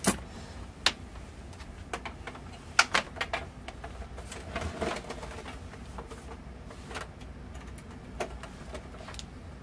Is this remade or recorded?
recorded